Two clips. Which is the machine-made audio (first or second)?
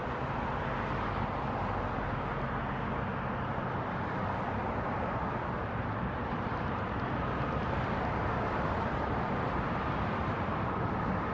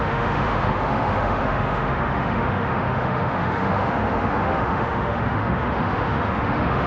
second